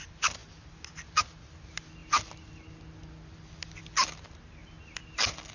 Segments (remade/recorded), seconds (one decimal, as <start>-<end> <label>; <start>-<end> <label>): 0.0-5.5 recorded